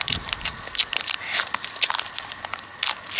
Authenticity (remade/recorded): recorded